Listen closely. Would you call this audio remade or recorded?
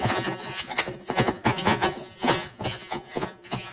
remade